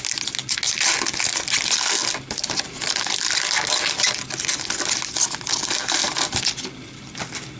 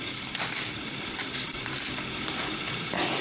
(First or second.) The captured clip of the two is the first